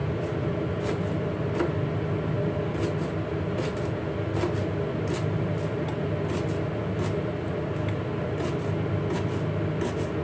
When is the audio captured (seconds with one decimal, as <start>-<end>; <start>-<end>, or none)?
0.5-10.2